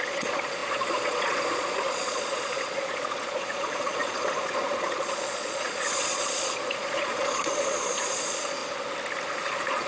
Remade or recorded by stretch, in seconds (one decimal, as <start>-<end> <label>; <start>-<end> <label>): 0.0-8.6 remade; 8.6-9.3 recorded; 9.3-9.9 remade